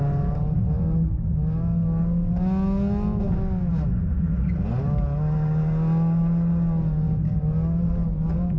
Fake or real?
real